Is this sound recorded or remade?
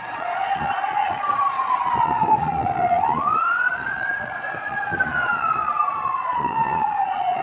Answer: remade